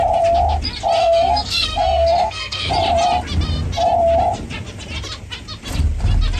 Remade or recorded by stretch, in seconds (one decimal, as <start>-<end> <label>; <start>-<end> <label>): 0.0-1.0 recorded; 1.0-2.7 remade; 2.7-6.4 recorded